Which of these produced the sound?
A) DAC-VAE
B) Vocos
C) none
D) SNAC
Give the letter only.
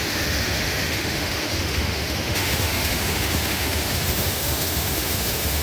A